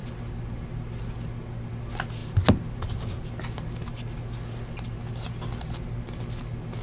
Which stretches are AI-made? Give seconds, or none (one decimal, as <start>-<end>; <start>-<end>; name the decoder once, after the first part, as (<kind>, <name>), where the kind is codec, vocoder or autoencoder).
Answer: none